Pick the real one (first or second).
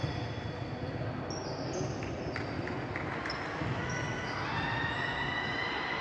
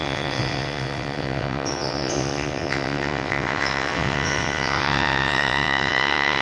first